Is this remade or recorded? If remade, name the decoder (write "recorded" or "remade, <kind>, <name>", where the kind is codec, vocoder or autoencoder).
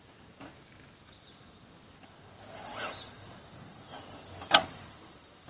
remade, vocoder, BigVGAN v2